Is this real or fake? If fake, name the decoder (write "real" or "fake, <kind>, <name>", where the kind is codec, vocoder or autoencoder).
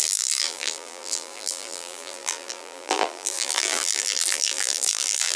fake, vocoder, BigVGAN v2